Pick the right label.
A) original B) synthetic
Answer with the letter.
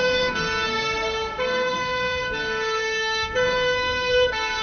B